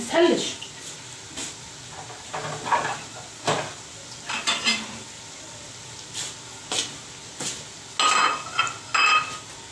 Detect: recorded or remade recorded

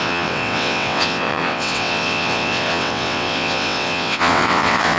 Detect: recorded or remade remade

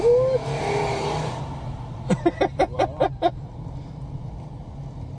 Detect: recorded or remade recorded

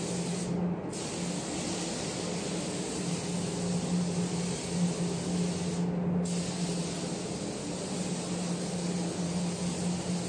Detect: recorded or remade recorded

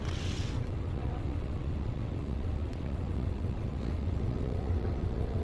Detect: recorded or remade remade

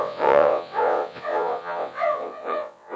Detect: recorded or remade remade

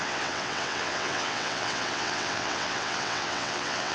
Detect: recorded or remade remade